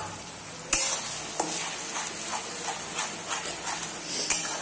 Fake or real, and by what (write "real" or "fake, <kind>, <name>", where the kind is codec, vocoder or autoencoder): real